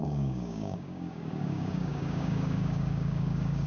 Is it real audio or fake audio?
fake